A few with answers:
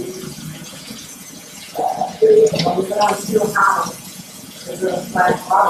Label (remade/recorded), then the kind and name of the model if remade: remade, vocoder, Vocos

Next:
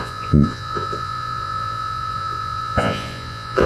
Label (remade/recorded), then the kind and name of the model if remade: remade, vocoder, Vocos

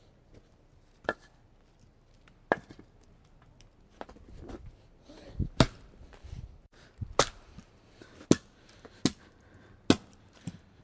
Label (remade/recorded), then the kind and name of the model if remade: recorded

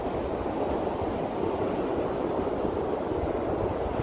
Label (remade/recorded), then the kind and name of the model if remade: recorded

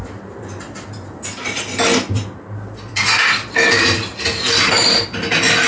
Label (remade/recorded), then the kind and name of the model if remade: recorded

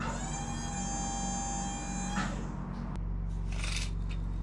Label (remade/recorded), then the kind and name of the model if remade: recorded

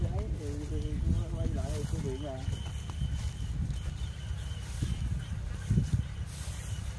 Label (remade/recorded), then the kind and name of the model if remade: recorded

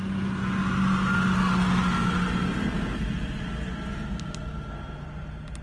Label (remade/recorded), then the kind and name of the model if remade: recorded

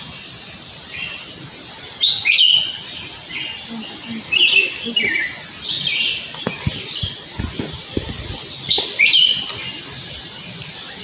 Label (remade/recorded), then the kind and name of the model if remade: recorded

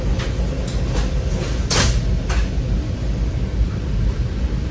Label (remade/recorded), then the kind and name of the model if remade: recorded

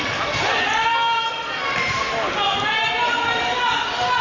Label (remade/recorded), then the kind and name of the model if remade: recorded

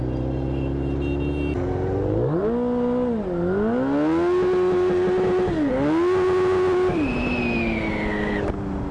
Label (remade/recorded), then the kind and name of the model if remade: recorded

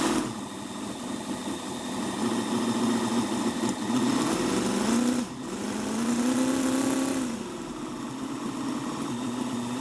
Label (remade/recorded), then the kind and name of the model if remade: recorded